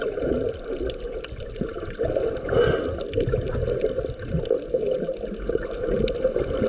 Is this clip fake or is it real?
real